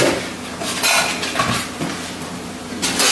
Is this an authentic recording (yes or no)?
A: yes